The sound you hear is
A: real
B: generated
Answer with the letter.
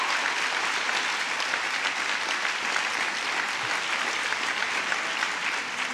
A